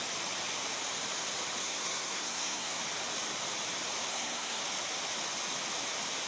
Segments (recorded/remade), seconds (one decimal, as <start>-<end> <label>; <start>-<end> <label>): 0.0-1.6 recorded; 1.6-2.8 remade; 2.8-4.1 recorded; 4.1-4.6 remade; 4.6-6.3 recorded